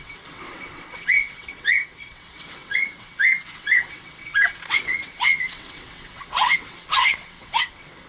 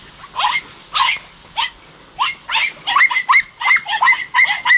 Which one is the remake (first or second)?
first